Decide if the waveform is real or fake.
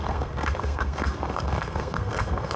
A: fake